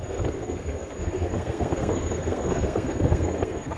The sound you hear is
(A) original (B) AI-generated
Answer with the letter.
B